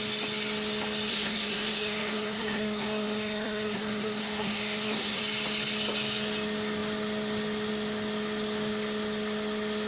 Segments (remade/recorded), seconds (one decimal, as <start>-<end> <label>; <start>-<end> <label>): 0.0-1.1 recorded; 1.1-5.2 remade; 5.2-9.9 recorded